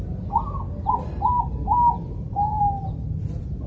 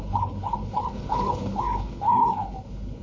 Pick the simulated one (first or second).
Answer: second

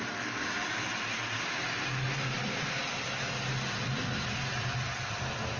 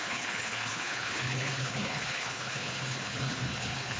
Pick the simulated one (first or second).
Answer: second